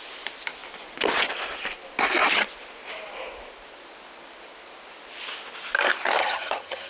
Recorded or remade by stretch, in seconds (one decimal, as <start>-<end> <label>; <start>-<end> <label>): 0.0-6.2 recorded; 6.2-6.9 remade